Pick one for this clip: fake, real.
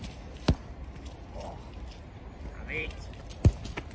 fake